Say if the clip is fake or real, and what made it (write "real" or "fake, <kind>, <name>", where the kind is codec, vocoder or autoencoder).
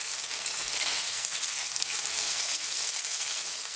fake, codec, SNAC